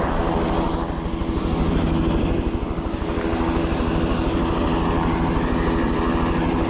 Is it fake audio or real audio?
real